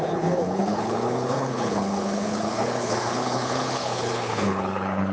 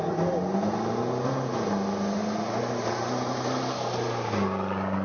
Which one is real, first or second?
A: second